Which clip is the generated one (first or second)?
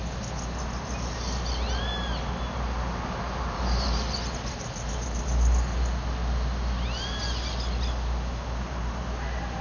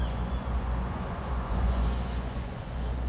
second